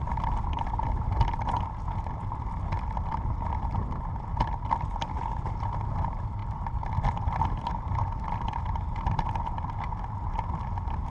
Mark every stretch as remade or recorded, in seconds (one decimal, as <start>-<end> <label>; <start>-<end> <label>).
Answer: 0.0-11.1 recorded